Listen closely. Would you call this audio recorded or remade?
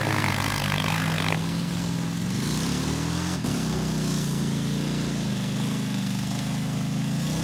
remade